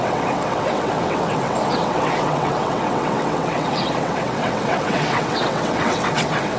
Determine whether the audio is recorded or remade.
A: remade